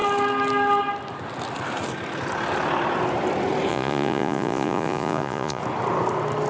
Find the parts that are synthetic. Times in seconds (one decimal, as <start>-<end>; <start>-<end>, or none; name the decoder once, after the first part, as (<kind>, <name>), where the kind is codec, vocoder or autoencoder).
3.7-5.6 (vocoder, Vocos)